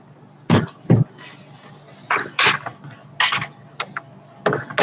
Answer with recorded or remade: recorded